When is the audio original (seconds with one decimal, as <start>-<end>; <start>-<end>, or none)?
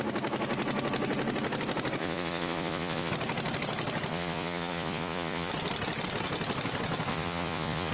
0.0-2.0; 3.1-4.1; 5.5-7.1